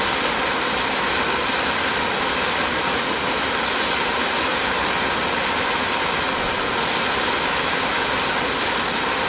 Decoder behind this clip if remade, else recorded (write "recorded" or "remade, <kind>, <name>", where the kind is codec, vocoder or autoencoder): recorded